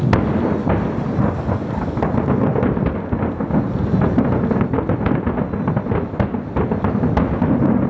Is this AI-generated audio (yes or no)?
no